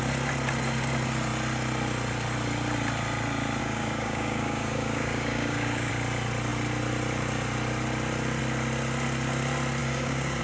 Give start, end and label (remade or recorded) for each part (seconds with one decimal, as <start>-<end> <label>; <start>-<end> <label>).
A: 0.0-3.6 recorded; 3.6-5.9 remade; 5.9-9.8 recorded; 9.8-10.4 remade